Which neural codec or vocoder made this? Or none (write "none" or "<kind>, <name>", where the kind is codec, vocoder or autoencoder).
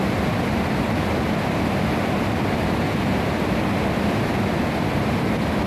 none